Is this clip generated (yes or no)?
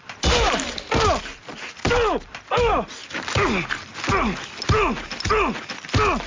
no